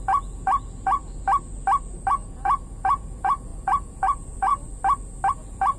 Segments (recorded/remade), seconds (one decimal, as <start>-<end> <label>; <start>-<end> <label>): 0.0-1.0 remade; 1.0-2.1 recorded; 2.1-4.5 remade; 4.5-5.3 recorded; 5.3-5.8 remade